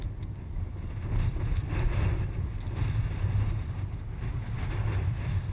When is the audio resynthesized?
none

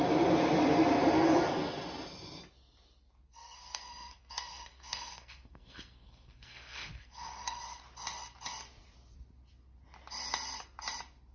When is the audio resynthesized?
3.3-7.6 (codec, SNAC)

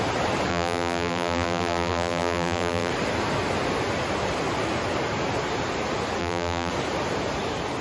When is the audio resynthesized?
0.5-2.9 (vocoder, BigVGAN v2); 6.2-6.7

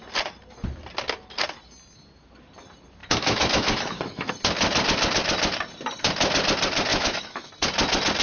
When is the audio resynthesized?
3.0-4.3 (autoencoder, DAC-VAE); 6.9-7.5